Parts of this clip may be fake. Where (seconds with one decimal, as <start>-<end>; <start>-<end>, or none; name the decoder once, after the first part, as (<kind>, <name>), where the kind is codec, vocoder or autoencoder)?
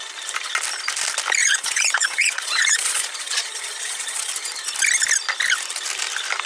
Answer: 1.4-4.3 (vocoder, Vocos)